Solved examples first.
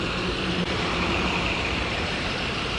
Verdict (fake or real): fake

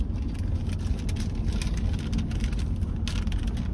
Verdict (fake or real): real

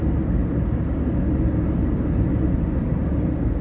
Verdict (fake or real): fake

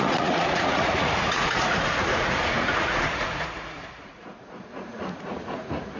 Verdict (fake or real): fake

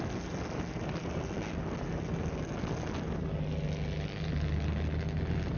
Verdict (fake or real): real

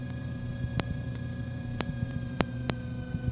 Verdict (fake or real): fake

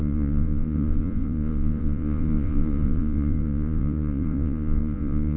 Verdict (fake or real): fake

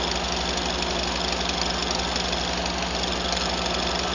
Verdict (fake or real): real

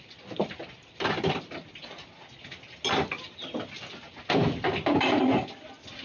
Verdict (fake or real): real